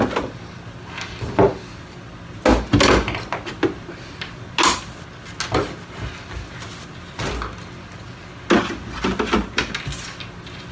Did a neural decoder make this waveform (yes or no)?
no